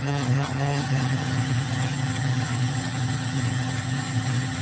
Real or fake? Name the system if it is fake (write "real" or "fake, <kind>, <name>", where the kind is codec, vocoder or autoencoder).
fake, vocoder, HiFi-GAN